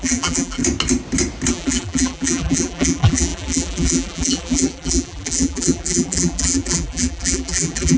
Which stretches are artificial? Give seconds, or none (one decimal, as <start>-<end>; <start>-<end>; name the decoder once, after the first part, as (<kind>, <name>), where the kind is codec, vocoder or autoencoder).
0.0-0.6 (vocoder, BigVGAN v2); 1.5-8.0